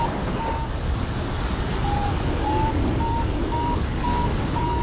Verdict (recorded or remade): remade